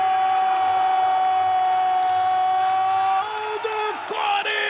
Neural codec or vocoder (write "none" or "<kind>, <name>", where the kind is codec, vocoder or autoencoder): none